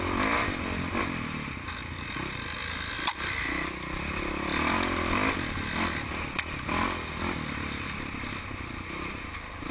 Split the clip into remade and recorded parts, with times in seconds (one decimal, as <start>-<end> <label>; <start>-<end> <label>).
0.0-9.7 recorded